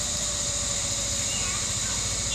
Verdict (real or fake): real